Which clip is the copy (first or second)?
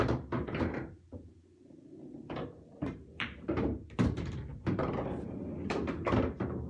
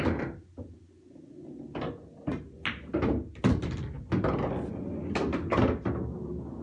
first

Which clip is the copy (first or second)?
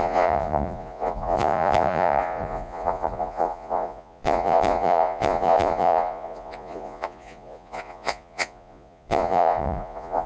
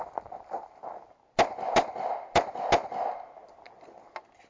first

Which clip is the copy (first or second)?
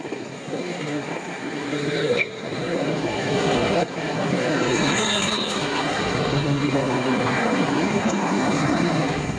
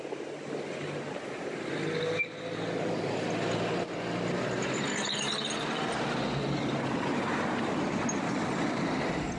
first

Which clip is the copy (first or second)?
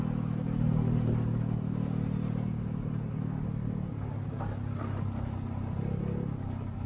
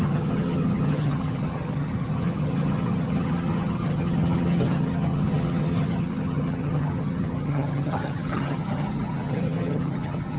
second